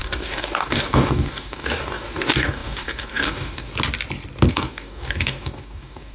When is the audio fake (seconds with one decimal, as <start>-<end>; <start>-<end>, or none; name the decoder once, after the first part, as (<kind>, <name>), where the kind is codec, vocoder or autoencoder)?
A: 0.0-3.7 (codec, DAC); 4.5-6.1